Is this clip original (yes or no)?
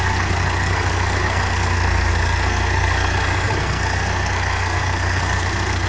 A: no